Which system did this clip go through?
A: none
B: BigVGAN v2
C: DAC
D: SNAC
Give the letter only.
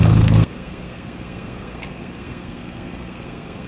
D